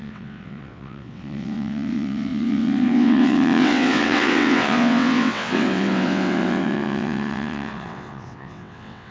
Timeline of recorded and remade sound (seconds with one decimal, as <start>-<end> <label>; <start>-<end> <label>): 0.0-9.1 remade